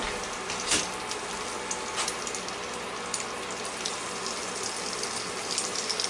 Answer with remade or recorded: recorded